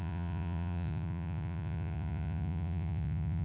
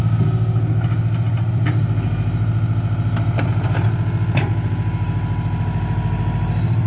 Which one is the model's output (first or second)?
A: first